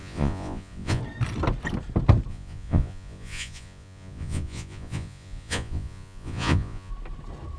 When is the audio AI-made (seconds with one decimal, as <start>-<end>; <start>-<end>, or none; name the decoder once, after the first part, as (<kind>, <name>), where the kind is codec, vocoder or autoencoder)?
0.0-1.0 (vocoder, Vocos); 2.3-6.9